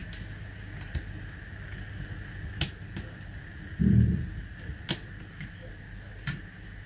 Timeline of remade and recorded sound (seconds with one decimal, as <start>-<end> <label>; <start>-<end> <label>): 0.0-6.9 recorded